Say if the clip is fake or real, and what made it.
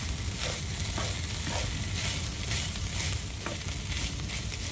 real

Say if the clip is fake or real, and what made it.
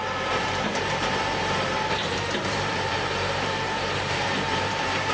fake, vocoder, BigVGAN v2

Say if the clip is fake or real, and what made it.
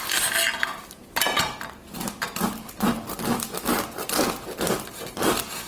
real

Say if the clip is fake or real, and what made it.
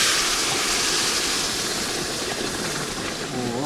real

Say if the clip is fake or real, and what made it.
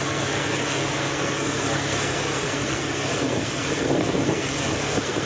fake, codec, SNAC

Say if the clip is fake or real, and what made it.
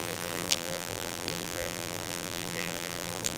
fake, vocoder, BigVGAN v2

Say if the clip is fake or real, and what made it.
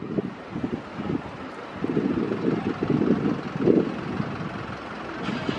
real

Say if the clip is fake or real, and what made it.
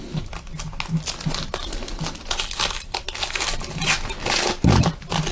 real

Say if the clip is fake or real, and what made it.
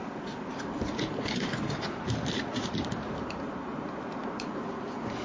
fake, vocoder, BigVGAN v2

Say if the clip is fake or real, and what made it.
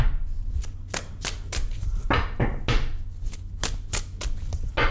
real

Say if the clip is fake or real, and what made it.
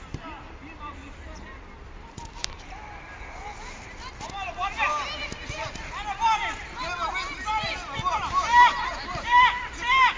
real